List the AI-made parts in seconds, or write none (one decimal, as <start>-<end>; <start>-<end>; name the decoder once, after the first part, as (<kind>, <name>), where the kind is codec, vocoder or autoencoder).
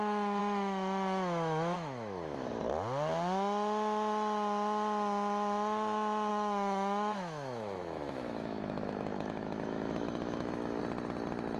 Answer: 0.4-2.6 (autoencoder, DAC-VAE); 6.3-10.8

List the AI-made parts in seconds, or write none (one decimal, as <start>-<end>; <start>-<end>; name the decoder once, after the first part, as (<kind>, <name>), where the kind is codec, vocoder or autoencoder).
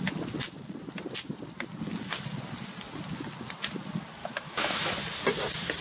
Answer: 4.2-4.9 (autoencoder, DAC-VAE)